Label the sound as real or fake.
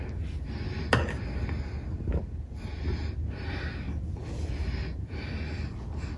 real